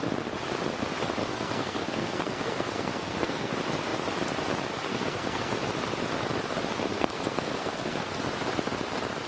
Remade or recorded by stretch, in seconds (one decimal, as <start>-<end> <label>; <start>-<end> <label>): 0.0-1.2 recorded; 1.2-3.5 remade; 3.5-4.9 recorded; 4.9-5.6 remade; 5.6-6.9 recorded; 6.9-8.1 remade; 8.1-9.3 recorded